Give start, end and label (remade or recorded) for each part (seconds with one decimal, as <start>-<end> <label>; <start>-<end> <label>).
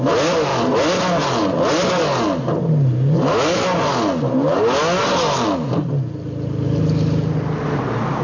0.0-8.2 recorded